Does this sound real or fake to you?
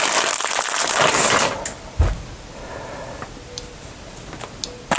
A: real